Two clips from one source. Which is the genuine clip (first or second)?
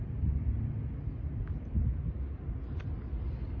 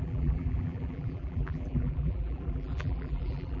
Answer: first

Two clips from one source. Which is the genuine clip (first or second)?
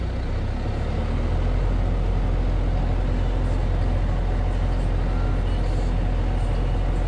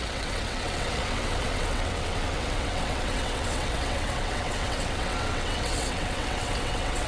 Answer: first